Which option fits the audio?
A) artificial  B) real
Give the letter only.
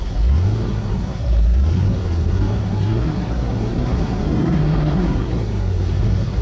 A